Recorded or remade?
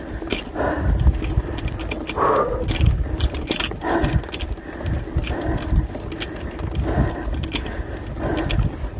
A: recorded